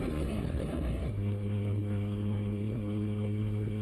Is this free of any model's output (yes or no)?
no